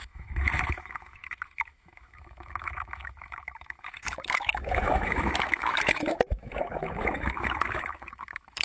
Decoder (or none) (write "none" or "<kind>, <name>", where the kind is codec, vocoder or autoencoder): autoencoder, DAC-VAE